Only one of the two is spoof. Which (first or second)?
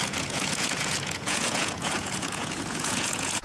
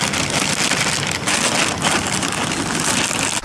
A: first